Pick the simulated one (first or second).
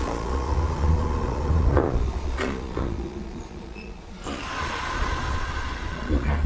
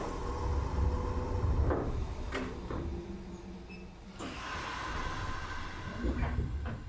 first